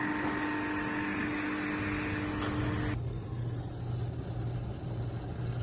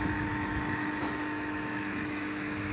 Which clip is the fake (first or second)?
second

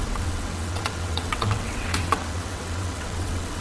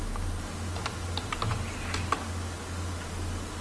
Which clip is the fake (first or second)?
first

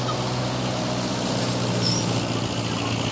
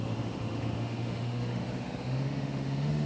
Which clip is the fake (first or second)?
second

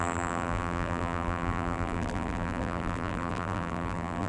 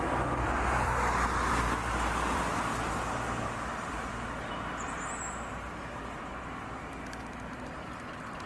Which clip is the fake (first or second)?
first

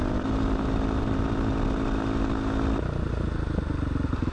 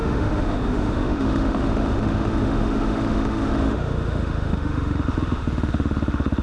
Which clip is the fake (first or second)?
second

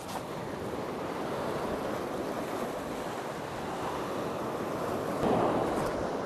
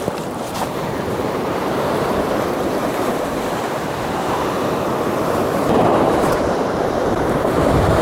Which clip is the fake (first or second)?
second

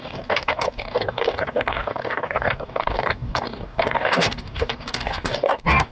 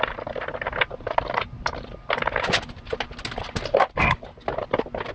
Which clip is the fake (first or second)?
first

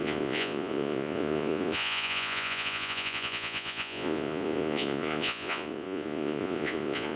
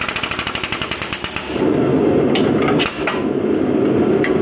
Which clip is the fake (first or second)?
first